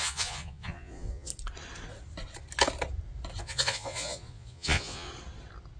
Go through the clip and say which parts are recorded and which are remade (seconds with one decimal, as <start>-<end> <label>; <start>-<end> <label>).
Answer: 0.0-1.3 remade; 1.3-3.4 recorded; 3.4-5.1 remade; 5.1-5.8 recorded